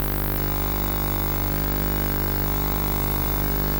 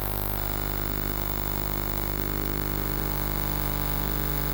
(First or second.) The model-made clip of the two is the second